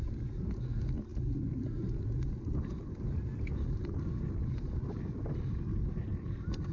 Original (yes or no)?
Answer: yes